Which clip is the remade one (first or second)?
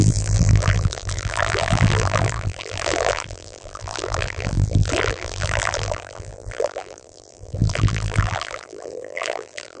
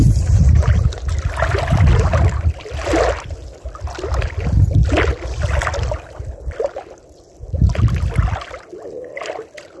first